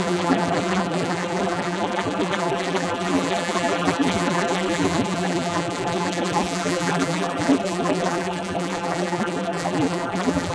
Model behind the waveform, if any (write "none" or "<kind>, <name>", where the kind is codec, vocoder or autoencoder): vocoder, BigVGAN v2